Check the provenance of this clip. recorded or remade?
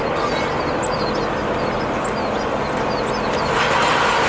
recorded